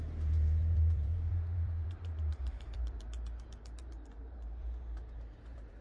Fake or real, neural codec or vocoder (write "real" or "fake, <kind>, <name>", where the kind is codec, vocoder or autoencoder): fake, vocoder, BigVGAN v2